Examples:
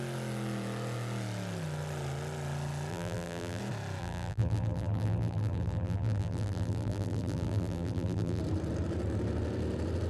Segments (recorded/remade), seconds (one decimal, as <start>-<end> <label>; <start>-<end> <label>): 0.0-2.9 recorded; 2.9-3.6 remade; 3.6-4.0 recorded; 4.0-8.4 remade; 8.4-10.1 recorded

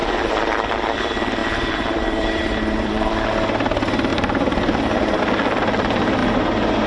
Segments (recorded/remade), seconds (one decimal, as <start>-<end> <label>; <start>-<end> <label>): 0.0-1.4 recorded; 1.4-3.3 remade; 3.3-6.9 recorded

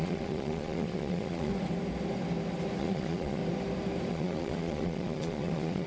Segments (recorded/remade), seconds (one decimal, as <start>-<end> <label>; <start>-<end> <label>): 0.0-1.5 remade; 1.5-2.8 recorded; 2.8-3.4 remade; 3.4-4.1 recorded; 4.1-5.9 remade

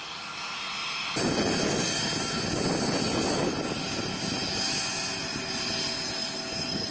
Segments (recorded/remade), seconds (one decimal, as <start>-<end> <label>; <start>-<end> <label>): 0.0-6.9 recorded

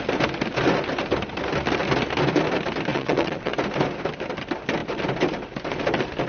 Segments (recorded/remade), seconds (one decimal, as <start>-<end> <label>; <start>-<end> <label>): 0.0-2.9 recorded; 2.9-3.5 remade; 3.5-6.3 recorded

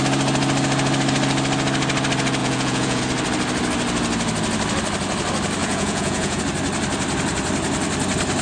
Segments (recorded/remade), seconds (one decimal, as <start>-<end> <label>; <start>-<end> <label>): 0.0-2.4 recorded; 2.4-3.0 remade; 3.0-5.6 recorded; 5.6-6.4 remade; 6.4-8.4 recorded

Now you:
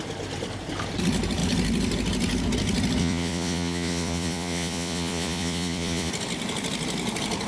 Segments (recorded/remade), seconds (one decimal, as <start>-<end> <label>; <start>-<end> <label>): 0.0-3.0 recorded; 3.0-6.1 remade; 6.1-7.5 recorded